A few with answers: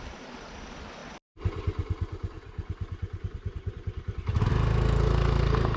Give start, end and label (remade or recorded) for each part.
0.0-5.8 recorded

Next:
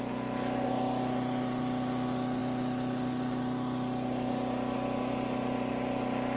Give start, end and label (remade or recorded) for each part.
0.0-6.4 recorded

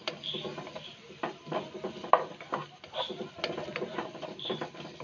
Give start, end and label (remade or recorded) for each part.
0.0-5.0 recorded

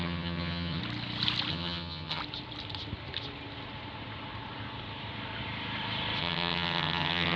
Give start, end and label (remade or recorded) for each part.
0.0-0.8 remade; 0.8-1.5 recorded; 1.5-2.2 remade; 2.2-6.2 recorded; 6.2-7.4 remade

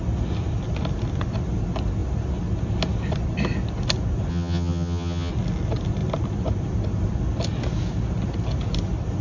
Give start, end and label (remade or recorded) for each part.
0.0-4.3 recorded; 4.3-5.3 remade; 5.3-9.2 recorded

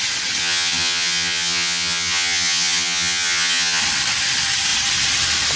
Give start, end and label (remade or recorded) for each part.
0.0-0.4 recorded; 0.4-3.8 remade; 3.8-5.6 recorded